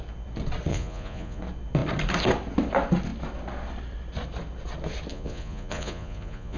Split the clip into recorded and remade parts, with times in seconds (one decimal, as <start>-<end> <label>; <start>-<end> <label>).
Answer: 0.0-0.7 recorded; 0.7-1.4 remade; 1.4-5.1 recorded; 5.1-6.6 remade